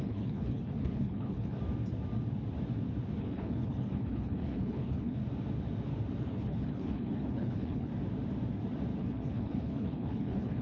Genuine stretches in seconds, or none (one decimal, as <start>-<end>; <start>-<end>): 1.6-3.2; 5.2-6.2; 7.9-9.0